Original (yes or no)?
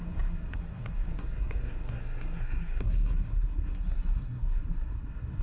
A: no